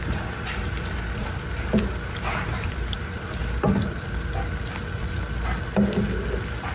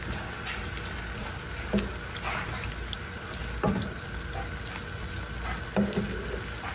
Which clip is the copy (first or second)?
first